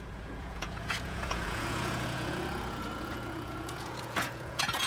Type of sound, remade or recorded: remade